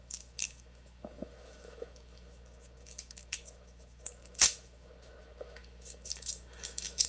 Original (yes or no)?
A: no